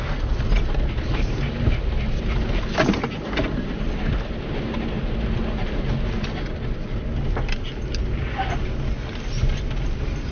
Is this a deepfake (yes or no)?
no